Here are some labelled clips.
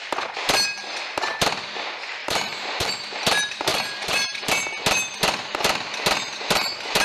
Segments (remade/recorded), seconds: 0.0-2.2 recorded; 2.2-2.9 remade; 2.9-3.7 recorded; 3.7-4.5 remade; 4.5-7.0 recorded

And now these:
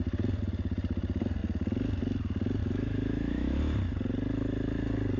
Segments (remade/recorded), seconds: 0.0-2.6 recorded; 2.6-3.6 remade; 3.6-5.2 recorded

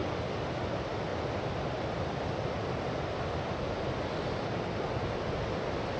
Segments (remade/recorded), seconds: 0.0-6.0 recorded

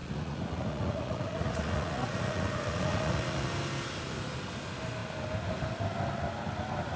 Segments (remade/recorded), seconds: 0.0-3.5 remade; 3.5-7.0 recorded

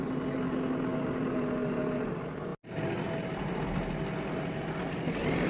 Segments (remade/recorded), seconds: 0.0-5.5 recorded

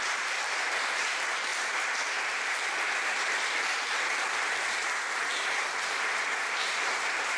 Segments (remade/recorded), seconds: 0.0-1.5 remade; 1.5-5.9 recorded; 5.9-7.4 remade

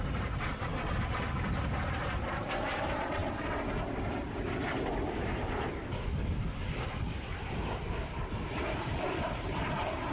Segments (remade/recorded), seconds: 0.0-3.2 remade; 3.2-8.3 recorded; 8.3-10.1 remade